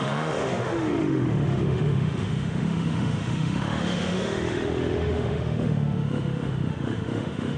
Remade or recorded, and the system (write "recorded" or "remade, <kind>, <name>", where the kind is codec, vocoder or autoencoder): remade, autoencoder, DAC-VAE